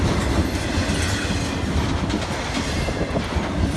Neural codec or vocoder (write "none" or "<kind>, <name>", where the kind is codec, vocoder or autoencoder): none